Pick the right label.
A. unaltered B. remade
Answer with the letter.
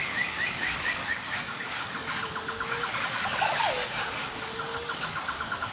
B